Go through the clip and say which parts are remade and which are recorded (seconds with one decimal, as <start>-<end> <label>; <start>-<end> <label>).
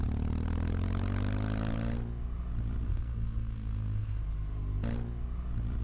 0.0-2.9 recorded; 2.9-4.2 remade; 4.2-5.8 recorded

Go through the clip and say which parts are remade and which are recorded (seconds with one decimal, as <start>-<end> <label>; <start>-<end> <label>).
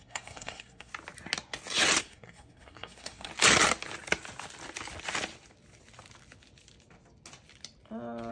0.0-0.9 remade; 0.9-2.0 recorded; 2.0-3.3 remade; 3.3-8.3 recorded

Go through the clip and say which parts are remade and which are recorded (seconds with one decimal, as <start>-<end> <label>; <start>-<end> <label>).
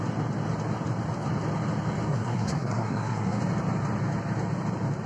0.0-2.1 recorded; 2.1-3.4 remade; 3.4-5.1 recorded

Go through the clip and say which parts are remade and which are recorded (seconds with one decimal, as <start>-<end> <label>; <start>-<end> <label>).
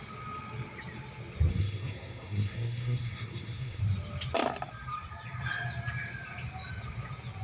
0.0-1.5 recorded; 1.5-3.8 remade; 3.8-7.4 recorded